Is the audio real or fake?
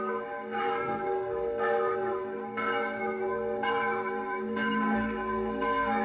fake